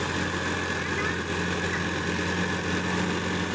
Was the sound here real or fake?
real